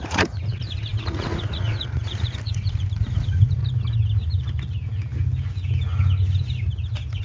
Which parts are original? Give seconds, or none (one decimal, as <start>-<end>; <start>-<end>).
3.6-7.2